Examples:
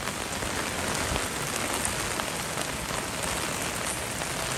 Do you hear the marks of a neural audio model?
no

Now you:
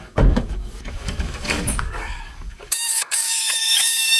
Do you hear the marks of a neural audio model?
yes